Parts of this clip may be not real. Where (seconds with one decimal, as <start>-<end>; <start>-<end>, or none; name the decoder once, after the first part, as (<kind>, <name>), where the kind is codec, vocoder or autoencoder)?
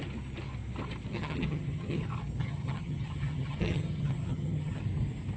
1.1-2.0 (vocoder, HiFi-GAN); 2.4-4.8